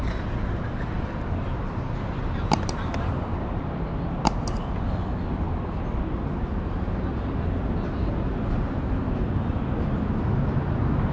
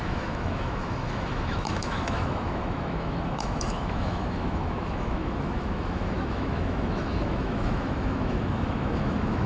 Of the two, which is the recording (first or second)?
first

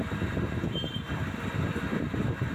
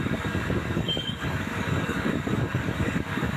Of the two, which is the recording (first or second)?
first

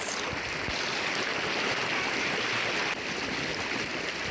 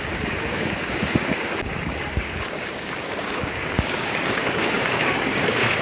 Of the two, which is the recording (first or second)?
first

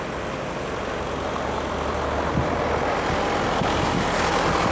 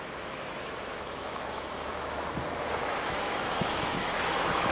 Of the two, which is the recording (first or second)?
first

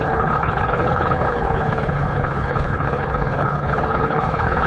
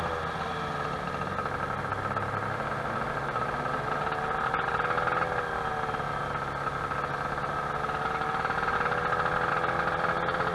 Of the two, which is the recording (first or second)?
second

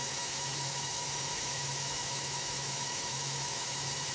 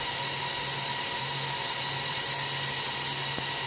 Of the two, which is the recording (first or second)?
second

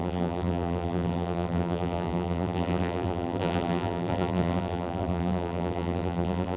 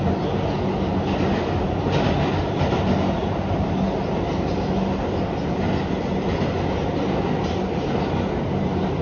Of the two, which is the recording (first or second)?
second